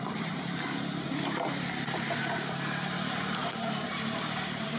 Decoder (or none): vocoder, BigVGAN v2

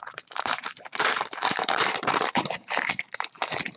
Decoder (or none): vocoder, BigVGAN v2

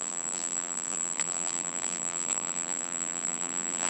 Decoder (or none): vocoder, BigVGAN v2